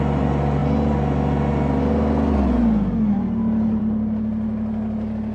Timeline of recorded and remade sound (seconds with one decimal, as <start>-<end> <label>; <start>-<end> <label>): 0.0-5.3 recorded